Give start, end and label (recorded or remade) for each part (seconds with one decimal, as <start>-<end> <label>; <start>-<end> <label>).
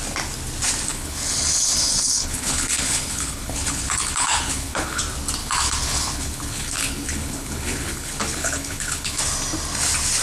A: 0.0-0.9 recorded; 0.9-5.0 remade; 5.0-5.4 recorded; 5.4-9.2 remade; 9.2-10.2 recorded